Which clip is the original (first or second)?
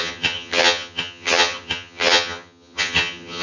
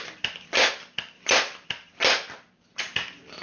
second